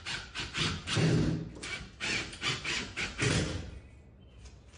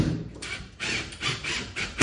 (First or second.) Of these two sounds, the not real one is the second